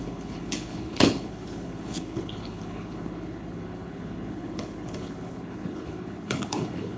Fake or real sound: fake